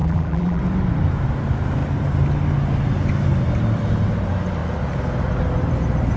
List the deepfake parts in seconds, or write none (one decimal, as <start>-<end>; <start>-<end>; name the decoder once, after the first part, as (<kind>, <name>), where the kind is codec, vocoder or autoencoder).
0.0-0.6 (vocoder, BigVGAN v2)